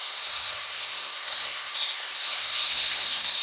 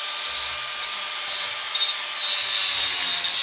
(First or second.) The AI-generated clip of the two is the first